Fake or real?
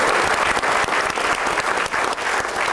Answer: real